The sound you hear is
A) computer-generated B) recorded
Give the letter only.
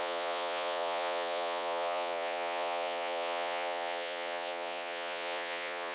A